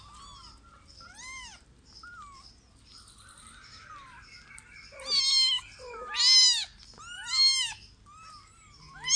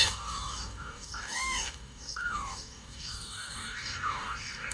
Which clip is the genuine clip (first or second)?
first